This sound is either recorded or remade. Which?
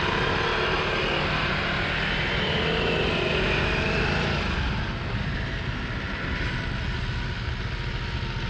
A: recorded